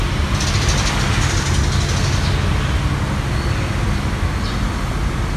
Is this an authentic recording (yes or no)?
yes